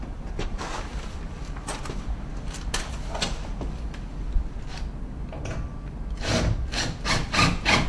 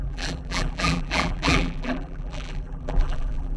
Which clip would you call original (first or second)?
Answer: first